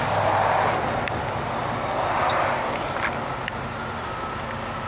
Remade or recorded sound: recorded